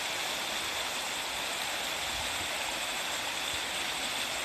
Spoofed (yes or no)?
no